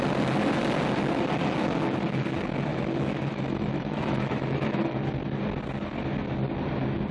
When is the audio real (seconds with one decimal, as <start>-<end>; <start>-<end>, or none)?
0.0-2.7; 5.0-7.1